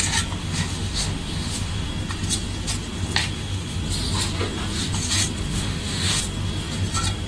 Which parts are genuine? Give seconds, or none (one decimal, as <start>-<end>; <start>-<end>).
0.0-0.4; 1.9-3.2; 3.8-5.5; 6.2-7.3